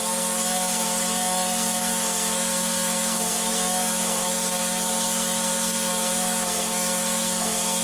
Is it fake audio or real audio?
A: fake